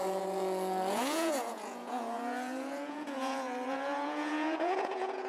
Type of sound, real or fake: fake